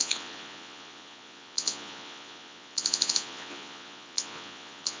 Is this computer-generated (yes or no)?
yes